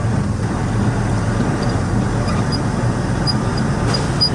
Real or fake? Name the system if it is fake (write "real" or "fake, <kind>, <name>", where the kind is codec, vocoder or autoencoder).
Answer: real